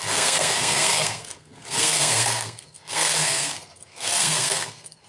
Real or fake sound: fake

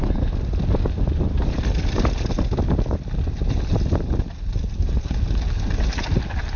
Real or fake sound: real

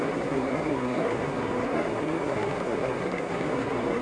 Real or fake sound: fake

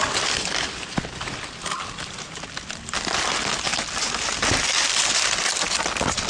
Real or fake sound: real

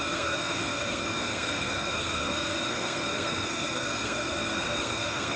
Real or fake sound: fake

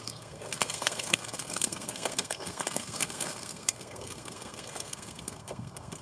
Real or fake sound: fake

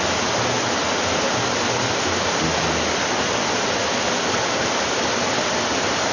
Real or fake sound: real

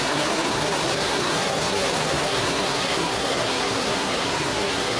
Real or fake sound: fake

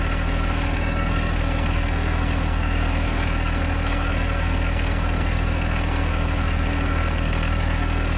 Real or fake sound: fake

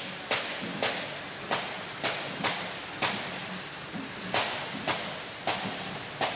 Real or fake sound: real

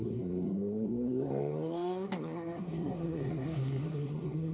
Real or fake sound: fake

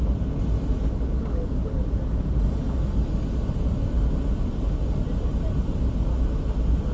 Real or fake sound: real